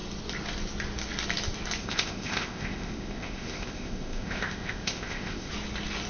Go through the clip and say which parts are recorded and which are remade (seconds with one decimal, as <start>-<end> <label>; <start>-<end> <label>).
0.0-1.8 recorded; 1.8-5.5 remade; 5.5-6.1 recorded